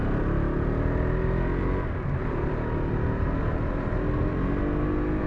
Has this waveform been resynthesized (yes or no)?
no